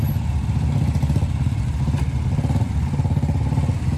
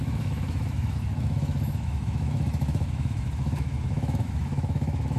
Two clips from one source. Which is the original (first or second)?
first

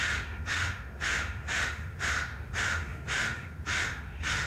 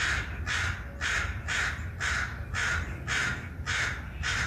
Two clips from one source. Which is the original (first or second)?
second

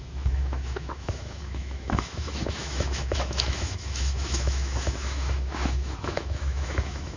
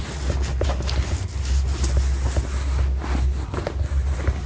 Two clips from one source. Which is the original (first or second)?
second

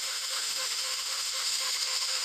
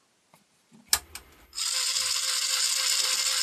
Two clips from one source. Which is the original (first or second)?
second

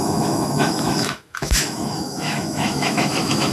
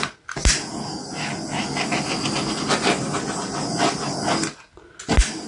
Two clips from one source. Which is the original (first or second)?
second